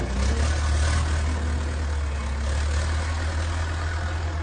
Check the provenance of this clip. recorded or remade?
recorded